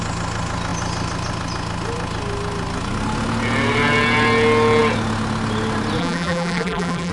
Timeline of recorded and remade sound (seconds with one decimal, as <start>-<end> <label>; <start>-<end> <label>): 0.0-6.0 recorded; 6.0-7.1 remade